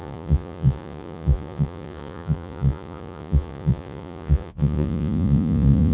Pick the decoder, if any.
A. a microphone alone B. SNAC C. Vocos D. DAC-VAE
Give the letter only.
C